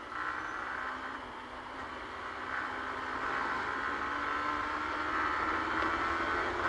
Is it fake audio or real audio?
real